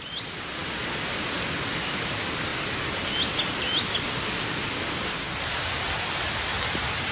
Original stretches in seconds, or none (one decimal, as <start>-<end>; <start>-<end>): 0.0-7.1